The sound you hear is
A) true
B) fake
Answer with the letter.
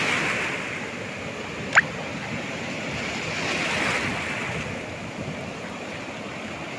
A